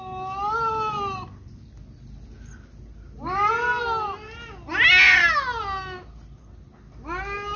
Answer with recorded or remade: recorded